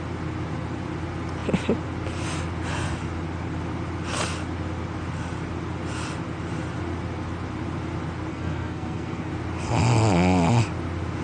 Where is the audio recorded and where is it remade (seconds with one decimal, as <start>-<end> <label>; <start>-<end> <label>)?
0.0-8.3 recorded; 8.3-9.3 remade; 9.3-11.2 recorded

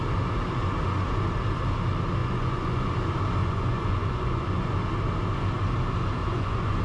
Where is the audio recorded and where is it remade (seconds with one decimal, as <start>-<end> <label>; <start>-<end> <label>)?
0.0-2.2 recorded; 2.2-2.9 remade; 2.9-3.4 recorded; 3.4-4.8 remade; 4.8-6.2 recorded; 6.2-6.8 remade

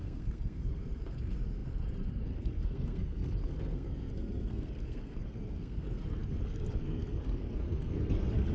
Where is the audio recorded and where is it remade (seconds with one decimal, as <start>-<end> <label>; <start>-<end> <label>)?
0.0-8.5 remade

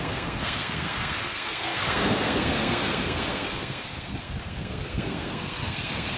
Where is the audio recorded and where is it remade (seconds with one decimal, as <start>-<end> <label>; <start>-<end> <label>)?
0.0-6.2 remade

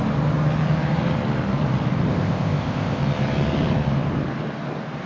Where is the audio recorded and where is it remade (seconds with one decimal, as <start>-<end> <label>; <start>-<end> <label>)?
0.0-2.1 recorded; 2.1-3.0 remade; 3.0-5.1 recorded

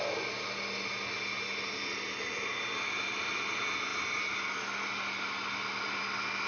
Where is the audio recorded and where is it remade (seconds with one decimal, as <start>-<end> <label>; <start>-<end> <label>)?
0.0-6.5 recorded

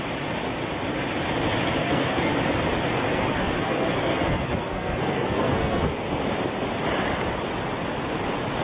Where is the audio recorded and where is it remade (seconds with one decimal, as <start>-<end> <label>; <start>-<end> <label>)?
0.0-1.8 recorded; 1.8-2.3 remade; 2.3-3.1 recorded; 3.1-6.2 remade; 6.2-8.6 recorded

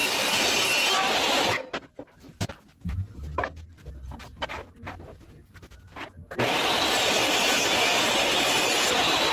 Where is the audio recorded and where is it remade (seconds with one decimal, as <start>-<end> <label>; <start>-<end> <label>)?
0.0-9.3 recorded